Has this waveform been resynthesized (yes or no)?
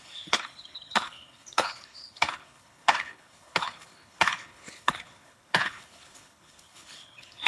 yes